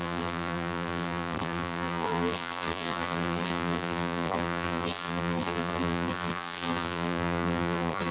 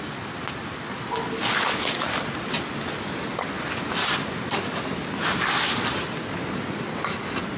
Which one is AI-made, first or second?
first